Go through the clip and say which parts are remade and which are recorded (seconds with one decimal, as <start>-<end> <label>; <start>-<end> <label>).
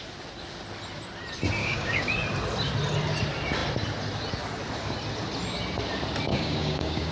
0.0-1.6 recorded; 1.6-2.1 remade; 2.1-6.3 recorded; 6.3-7.1 remade